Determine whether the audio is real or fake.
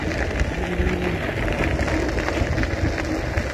real